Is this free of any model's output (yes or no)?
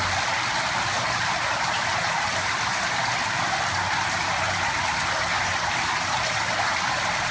yes